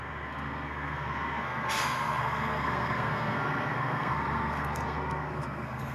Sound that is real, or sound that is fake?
fake